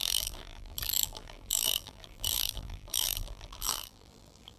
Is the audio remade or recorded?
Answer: remade